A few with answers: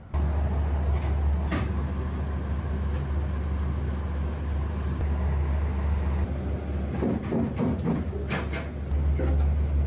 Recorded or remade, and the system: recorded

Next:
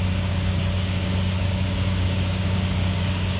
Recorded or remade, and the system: remade, codec, DAC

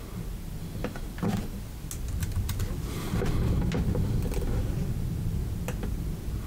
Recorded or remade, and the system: recorded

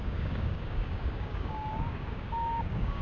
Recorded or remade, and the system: remade, codec, DAC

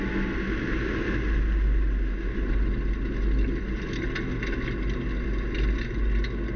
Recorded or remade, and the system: recorded